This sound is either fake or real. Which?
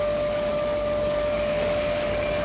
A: fake